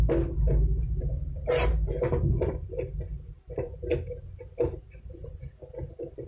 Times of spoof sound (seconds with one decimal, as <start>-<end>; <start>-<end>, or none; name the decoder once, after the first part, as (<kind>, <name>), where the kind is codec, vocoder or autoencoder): 1.6-5.4 (vocoder, BigVGAN v2)

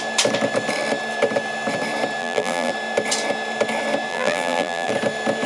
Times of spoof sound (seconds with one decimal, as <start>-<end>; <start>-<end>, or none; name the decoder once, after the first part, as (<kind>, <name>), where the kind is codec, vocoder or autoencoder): 2.2-2.7 (vocoder, BigVGAN v2); 4.1-4.9

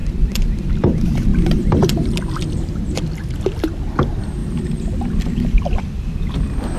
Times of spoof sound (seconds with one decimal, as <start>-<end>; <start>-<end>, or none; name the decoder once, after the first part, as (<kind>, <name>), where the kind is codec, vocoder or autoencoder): 0.0-0.7 (vocoder, BigVGAN v2); 1.3-2.8; 4.4-6.8

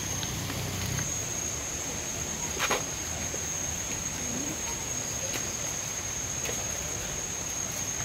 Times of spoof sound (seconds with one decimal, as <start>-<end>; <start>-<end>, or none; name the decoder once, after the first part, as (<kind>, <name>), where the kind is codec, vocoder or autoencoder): 2.1-4.7 (vocoder, BigVGAN v2); 5.3-6.8

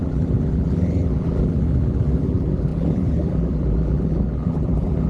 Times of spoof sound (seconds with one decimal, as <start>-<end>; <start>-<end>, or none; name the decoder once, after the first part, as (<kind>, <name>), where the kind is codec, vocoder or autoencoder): 0.0-5.1 (vocoder, BigVGAN v2)

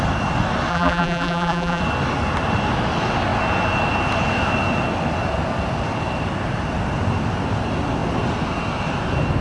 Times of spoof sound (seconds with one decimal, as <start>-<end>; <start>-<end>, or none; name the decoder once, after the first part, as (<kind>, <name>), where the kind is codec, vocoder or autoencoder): 0.7-1.8 (vocoder, BigVGAN v2)

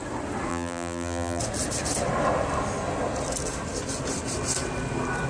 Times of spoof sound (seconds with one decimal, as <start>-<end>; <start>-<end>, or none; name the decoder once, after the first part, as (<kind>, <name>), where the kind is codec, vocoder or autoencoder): 0.5-1.4 (vocoder, BigVGAN v2)

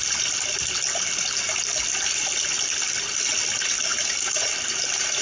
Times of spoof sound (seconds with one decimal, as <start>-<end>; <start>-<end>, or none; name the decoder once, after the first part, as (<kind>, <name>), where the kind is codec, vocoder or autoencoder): 3.9-4.5 (vocoder, BigVGAN v2)